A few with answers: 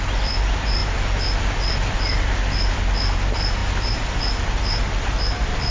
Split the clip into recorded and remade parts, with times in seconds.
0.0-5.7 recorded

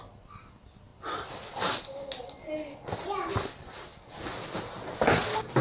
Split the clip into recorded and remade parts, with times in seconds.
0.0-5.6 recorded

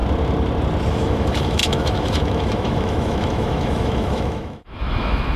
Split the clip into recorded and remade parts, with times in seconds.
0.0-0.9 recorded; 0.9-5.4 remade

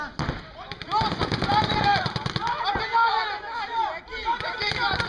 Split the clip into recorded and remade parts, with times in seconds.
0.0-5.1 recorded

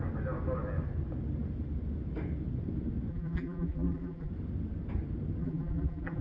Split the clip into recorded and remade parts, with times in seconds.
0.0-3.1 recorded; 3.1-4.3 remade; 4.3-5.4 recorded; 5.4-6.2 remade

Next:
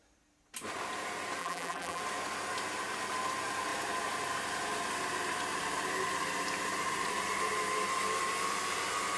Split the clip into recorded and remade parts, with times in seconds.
0.0-1.4 recorded; 1.4-2.0 remade; 2.0-9.2 recorded

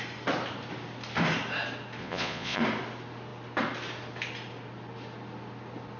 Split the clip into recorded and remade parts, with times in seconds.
0.0-2.0 recorded; 2.0-2.6 remade; 2.6-6.0 recorded